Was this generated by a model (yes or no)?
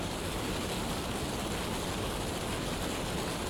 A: no